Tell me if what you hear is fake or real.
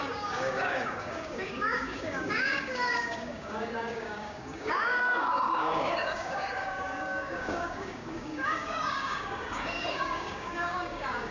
fake